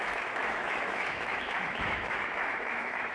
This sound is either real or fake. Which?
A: fake